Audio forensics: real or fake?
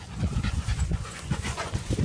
fake